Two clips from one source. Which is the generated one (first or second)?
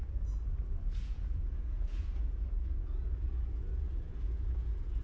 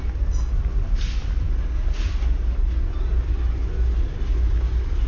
first